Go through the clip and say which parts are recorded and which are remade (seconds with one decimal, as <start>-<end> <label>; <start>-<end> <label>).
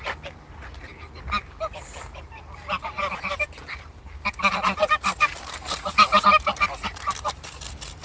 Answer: 0.0-8.0 recorded